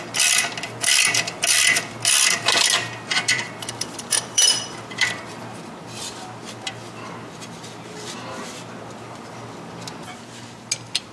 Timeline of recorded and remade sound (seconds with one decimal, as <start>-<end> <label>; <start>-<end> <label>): 0.0-3.1 recorded; 3.1-5.4 remade; 5.4-11.1 recorded